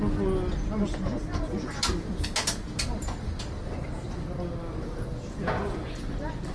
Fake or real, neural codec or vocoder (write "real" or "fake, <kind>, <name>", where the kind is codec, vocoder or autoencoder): real